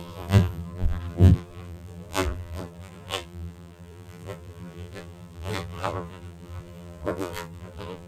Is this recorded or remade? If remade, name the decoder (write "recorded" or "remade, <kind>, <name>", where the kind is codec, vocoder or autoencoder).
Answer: remade, vocoder, BigVGAN v2